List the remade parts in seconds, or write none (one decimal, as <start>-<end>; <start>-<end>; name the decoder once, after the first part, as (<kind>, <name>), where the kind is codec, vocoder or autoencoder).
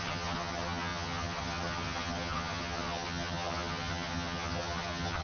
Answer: 0.0-5.2 (vocoder, HiFi-GAN)